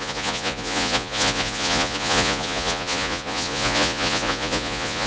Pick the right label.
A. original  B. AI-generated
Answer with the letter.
B